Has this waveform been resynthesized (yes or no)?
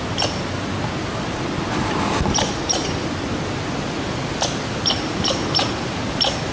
no